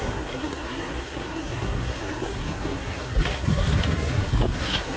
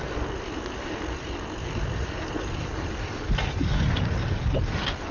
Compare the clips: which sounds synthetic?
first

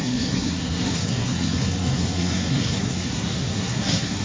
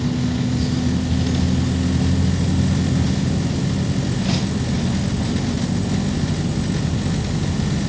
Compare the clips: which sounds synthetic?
first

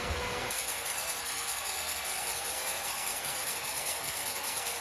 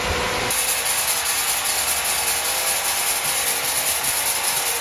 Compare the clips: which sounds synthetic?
first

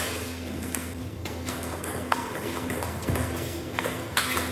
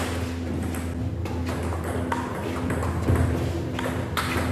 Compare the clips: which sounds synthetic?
first